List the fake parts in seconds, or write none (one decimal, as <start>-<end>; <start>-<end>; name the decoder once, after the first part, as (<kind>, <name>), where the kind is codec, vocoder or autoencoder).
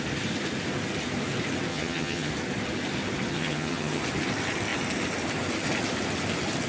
1.7-2.3 (vocoder, HiFi-GAN); 3.3-4.0